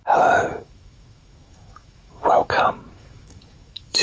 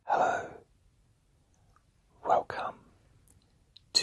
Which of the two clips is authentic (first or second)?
second